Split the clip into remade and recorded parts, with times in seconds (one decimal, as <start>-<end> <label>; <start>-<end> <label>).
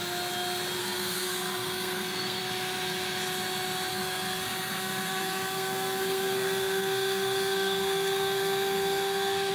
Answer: 0.0-0.8 recorded; 0.8-2.4 remade; 2.4-3.9 recorded; 3.9-9.5 remade